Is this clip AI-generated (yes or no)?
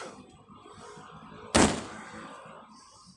no